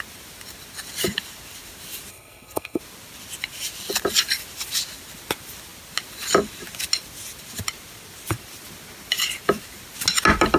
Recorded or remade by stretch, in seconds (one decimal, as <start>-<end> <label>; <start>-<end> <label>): 0.0-2.1 recorded; 2.1-2.8 remade; 2.8-10.6 recorded